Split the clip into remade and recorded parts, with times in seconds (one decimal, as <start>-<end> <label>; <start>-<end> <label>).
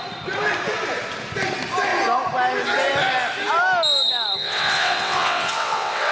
0.0-4.4 recorded; 4.4-6.1 remade